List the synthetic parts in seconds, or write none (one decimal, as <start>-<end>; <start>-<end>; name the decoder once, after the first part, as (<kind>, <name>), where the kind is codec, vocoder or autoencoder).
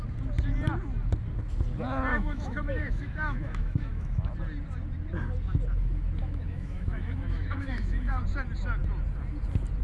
2.1-4.3 (autoencoder, DAC-VAE); 6.2-8.2